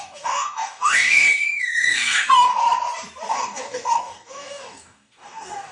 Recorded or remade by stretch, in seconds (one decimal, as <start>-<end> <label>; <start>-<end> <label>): 0.0-2.5 remade; 2.5-3.3 recorded; 3.3-5.7 remade